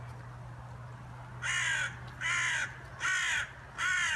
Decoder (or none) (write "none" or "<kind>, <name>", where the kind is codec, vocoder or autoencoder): none